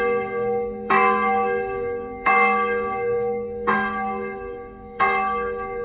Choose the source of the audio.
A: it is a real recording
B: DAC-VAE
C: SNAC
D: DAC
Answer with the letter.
D